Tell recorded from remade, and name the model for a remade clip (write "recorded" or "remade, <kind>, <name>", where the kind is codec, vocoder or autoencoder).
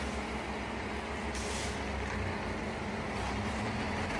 recorded